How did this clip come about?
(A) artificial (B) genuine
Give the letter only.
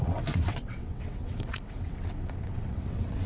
A